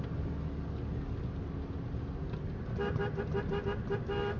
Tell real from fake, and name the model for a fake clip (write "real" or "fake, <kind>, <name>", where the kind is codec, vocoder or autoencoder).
real